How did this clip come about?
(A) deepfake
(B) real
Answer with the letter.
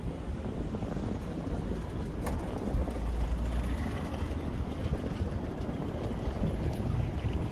B